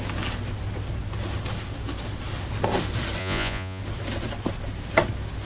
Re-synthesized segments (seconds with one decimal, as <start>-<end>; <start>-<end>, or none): 3.2-3.8